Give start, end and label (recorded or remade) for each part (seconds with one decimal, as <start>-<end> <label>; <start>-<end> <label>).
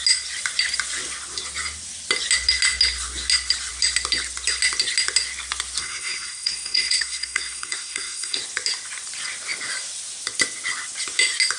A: 0.0-5.8 recorded; 5.8-8.4 remade; 8.4-11.6 recorded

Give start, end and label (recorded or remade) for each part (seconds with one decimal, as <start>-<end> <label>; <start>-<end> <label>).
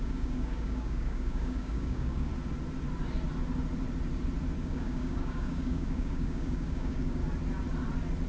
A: 0.0-2.3 remade; 2.3-4.6 recorded; 4.6-7.2 remade; 7.2-8.3 recorded